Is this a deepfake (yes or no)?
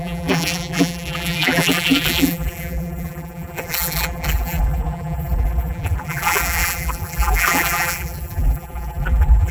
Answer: yes